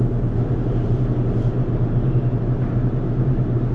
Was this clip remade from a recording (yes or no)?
yes